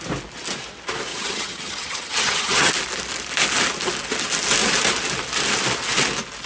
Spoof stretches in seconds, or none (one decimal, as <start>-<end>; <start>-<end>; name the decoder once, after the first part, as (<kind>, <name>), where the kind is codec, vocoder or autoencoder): 1.1-2.7 (vocoder, HiFi-GAN)